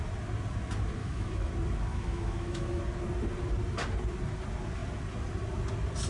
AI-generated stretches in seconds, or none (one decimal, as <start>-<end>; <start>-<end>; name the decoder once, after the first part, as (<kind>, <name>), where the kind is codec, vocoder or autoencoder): 1.0-1.5 (autoencoder, DAC-VAE); 1.9-2.8